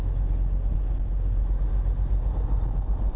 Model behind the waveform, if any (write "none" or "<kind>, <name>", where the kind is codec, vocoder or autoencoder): none